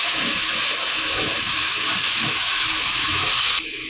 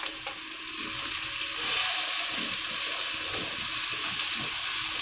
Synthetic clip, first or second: first